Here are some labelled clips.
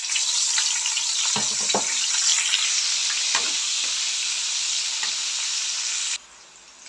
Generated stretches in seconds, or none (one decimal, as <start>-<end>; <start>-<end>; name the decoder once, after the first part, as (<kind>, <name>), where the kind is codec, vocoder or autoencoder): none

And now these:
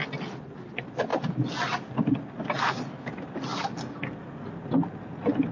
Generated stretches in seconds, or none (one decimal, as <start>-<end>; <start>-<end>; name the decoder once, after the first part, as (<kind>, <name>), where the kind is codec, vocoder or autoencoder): none

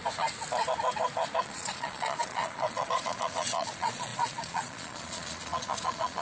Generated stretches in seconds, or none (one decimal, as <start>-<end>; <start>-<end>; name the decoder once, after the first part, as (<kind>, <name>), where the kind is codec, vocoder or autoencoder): 1.4-6.2 (vocoder, Vocos)

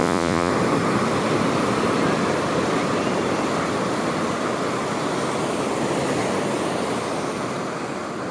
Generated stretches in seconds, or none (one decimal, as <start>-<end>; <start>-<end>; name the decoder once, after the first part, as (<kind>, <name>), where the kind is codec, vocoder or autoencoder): 0.0-0.5 (vocoder, Vocos)

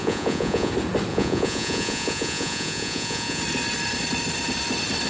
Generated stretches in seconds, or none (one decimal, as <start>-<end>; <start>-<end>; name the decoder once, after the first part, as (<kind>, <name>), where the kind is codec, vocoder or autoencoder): 0.0-0.7 (vocoder, Vocos); 1.1-3.4